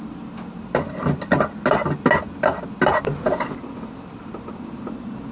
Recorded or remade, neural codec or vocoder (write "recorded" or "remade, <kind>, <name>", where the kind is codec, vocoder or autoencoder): recorded